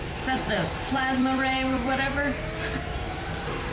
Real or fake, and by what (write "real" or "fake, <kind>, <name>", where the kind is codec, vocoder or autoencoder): fake, vocoder, BigVGAN v2